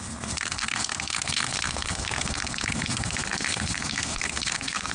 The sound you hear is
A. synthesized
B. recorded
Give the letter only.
A